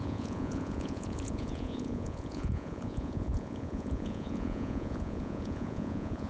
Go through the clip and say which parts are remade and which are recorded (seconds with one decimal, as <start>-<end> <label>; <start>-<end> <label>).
0.0-6.3 remade